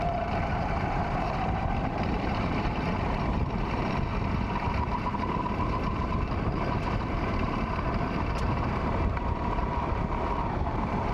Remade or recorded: remade